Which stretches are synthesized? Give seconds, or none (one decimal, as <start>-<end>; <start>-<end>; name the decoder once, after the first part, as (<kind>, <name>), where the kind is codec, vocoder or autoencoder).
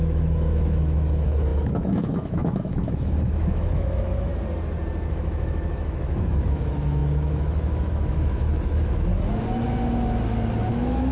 0.0-4.3 (autoencoder, DAC-VAE); 5.1-9.1; 10.7-11.1